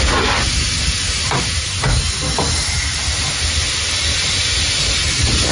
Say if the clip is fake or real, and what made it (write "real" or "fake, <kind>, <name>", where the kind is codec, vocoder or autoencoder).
real